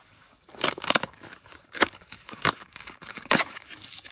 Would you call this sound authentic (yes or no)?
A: no